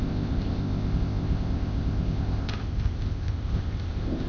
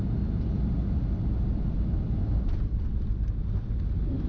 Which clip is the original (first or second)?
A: second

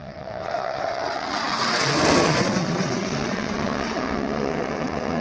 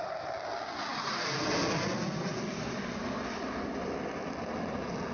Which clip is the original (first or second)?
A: second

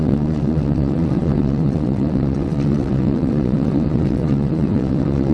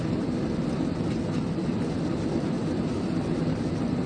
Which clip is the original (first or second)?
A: second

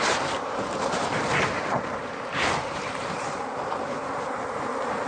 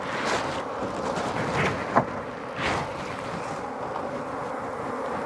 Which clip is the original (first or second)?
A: second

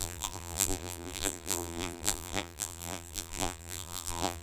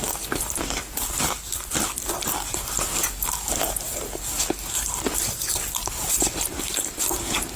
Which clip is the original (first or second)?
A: second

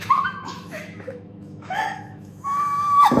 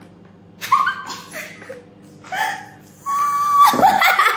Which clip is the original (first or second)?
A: second